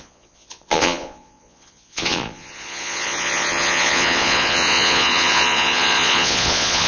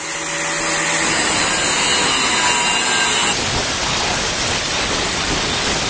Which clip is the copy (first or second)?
first